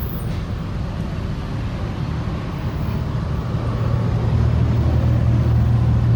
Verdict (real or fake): real